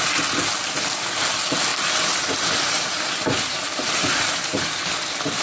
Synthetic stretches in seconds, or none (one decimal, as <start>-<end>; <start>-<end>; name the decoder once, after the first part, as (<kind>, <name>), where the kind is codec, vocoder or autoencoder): 1.7-4.9 (vocoder, BigVGAN v2)